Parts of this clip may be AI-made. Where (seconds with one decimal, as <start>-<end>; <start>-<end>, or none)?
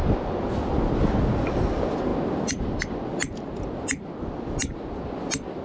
none